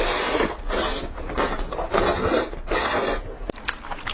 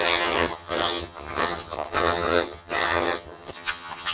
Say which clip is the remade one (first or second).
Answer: second